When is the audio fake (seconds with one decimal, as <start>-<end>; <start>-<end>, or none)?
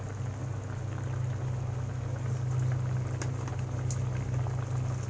none